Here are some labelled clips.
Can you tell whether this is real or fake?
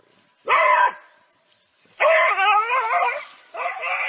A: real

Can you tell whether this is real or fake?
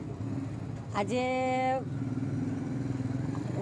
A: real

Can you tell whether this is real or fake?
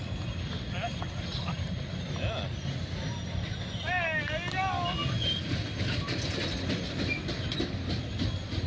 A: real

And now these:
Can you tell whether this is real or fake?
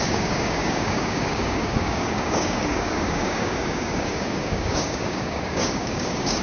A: fake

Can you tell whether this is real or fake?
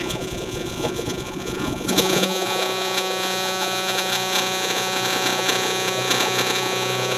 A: fake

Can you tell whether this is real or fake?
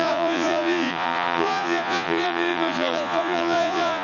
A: fake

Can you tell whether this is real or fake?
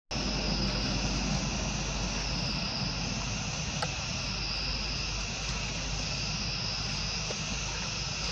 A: real